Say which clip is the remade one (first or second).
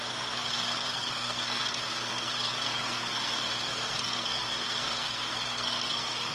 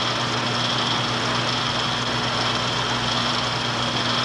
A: first